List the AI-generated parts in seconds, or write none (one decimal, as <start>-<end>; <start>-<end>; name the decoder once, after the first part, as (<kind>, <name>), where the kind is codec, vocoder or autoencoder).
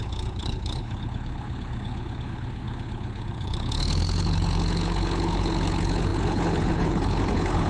0.0-7.7 (codec, HILCodec)